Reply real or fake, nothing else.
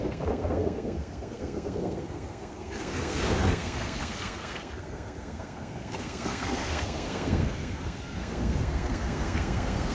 fake